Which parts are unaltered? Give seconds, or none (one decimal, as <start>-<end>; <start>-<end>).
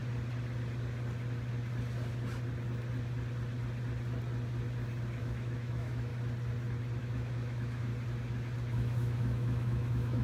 0.0-5.2; 6.1-7.0; 7.9-8.7